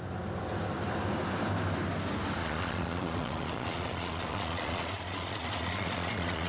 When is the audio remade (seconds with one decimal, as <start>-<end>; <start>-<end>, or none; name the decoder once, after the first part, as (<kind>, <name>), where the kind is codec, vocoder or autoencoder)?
2.4-6.5 (vocoder, Vocos)